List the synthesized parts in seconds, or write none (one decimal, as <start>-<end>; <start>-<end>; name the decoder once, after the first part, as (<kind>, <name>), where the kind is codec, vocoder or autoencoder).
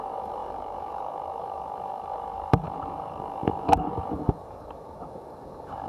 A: 0.0-5.9 (codec, DAC)